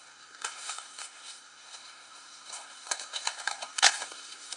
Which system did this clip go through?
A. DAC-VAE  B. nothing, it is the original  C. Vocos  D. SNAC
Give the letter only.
D